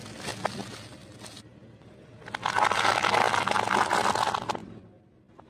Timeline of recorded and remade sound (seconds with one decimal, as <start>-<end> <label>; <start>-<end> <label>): 0.0-5.5 recorded